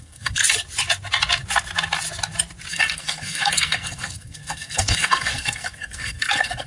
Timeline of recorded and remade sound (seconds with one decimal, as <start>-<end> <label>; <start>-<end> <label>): 0.0-0.4 remade; 0.4-2.7 recorded; 2.7-6.7 remade